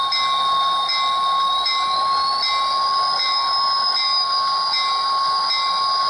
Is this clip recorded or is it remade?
recorded